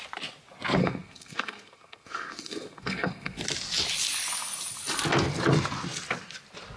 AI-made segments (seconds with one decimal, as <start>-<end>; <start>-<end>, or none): 0.8-3.4